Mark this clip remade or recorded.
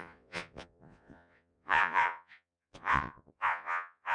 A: remade